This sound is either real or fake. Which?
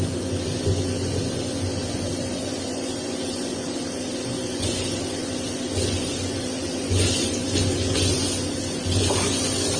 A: fake